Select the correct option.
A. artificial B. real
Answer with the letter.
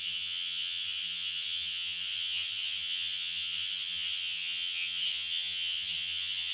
A